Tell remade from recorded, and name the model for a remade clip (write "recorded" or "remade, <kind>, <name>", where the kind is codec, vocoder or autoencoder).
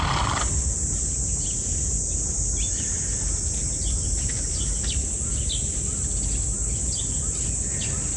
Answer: recorded